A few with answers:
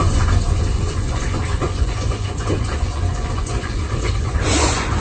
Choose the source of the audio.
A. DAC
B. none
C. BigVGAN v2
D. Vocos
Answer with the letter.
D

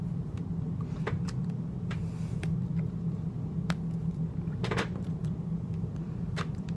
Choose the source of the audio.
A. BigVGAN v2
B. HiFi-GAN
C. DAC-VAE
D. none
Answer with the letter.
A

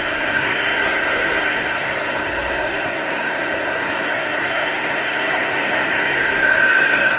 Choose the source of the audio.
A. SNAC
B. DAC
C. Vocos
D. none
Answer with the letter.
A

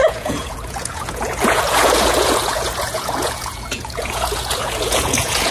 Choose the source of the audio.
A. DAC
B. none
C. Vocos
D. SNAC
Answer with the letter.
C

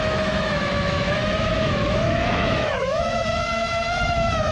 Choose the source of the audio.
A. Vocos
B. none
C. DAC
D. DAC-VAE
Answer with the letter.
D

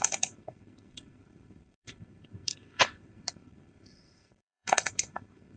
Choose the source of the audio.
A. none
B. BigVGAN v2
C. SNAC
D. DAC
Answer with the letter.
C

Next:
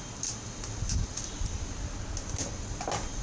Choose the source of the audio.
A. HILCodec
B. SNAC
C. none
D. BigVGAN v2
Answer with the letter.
C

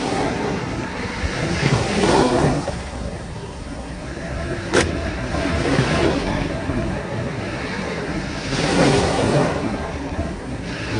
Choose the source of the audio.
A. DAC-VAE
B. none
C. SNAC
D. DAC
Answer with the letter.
C